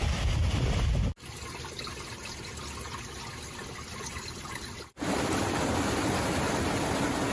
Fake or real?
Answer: real